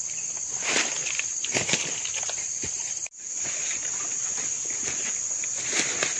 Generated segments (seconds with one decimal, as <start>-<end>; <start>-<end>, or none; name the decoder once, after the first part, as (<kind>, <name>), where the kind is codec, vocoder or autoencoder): none